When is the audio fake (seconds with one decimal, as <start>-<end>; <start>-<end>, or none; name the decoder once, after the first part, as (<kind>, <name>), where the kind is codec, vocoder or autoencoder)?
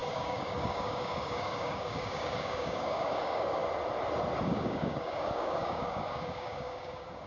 0.0-3.6 (codec, DAC); 4.4-7.3